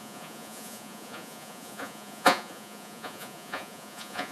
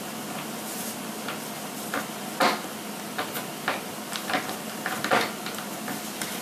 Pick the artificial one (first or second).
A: first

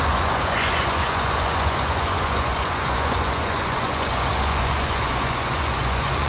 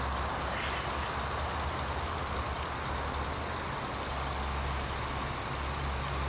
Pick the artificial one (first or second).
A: first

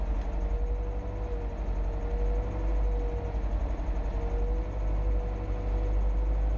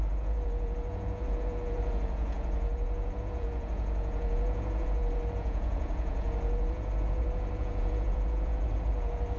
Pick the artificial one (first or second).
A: second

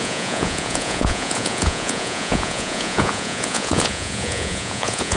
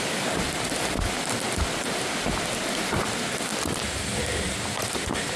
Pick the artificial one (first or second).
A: first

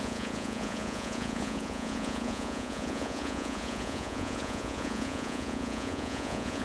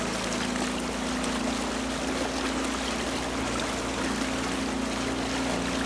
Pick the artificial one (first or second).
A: first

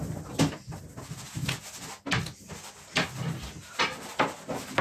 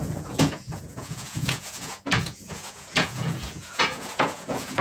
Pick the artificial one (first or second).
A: second